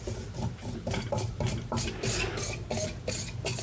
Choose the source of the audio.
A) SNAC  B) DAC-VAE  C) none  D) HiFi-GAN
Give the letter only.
C